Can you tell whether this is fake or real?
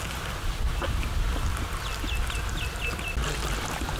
real